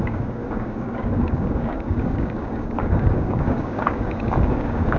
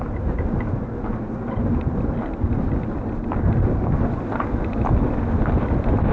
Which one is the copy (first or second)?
first